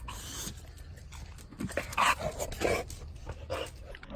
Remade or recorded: recorded